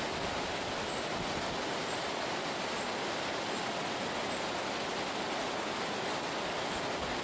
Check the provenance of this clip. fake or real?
real